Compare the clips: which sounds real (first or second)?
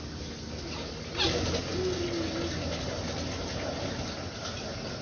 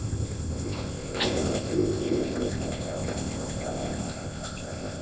first